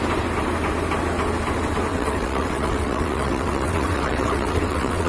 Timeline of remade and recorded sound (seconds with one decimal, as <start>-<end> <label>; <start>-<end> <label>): 0.0-1.9 recorded; 1.9-5.1 remade